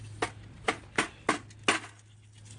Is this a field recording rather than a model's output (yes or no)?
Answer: yes